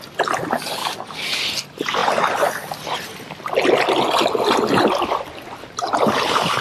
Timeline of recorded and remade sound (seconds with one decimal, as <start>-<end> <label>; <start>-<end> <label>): 0.0-0.8 recorded; 0.8-1.4 remade; 1.4-6.6 recorded